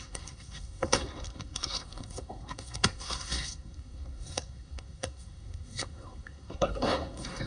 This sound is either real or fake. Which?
fake